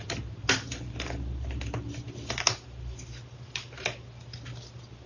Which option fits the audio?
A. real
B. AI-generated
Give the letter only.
A